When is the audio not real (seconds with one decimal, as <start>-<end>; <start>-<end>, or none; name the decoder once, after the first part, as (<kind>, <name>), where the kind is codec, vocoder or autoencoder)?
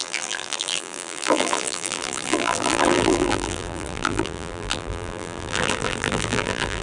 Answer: 0.0-6.8 (vocoder, BigVGAN v2)